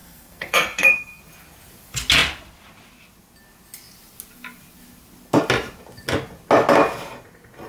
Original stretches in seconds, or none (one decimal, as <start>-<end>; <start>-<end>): 1.2-7.7